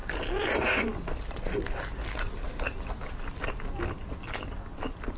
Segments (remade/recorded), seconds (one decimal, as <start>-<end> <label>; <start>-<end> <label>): 0.0-5.2 recorded

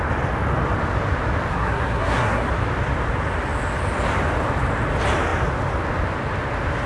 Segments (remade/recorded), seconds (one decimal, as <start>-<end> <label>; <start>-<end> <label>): 0.0-1.5 recorded; 1.5-2.5 remade; 2.5-6.9 recorded

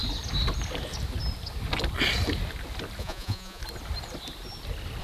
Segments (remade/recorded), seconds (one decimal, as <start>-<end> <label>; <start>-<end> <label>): 0.0-3.0 recorded; 3.0-3.6 remade; 3.6-5.0 recorded

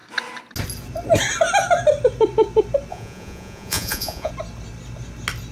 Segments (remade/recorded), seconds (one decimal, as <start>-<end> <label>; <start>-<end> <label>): 0.0-2.9 recorded; 2.9-4.3 remade; 4.3-5.5 recorded